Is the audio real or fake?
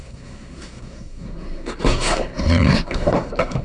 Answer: fake